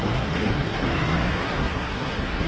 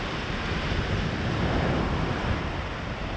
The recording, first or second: second